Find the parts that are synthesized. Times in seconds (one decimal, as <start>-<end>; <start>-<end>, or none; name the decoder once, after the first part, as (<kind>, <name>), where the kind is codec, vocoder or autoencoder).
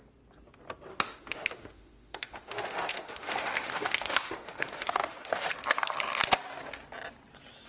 0.9-5.5 (autoencoder, DAC-VAE)